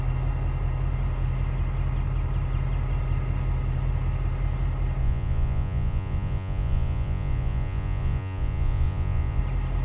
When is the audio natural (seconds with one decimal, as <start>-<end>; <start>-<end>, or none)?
0.0-5.0; 9.4-9.8